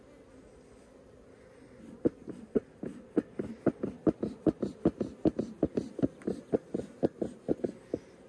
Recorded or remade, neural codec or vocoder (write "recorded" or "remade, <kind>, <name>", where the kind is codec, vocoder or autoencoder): recorded